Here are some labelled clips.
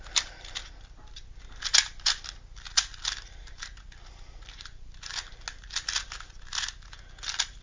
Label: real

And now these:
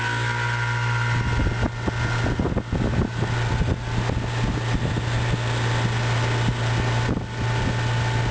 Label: real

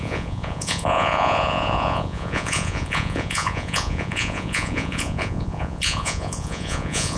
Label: fake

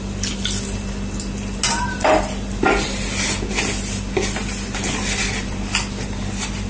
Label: real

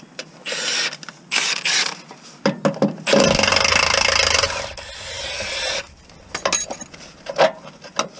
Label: real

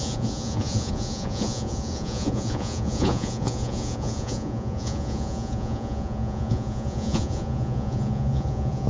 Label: fake